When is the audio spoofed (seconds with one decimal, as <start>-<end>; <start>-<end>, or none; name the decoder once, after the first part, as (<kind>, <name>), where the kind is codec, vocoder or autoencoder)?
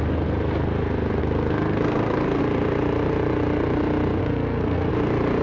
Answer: 1.2-2.4 (codec, SNAC); 4.2-4.9